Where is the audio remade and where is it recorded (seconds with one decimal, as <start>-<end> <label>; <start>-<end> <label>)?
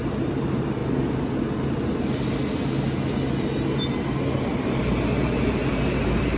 0.0-0.8 remade; 0.8-1.4 recorded; 1.4-2.4 remade; 2.4-4.2 recorded; 4.2-6.4 remade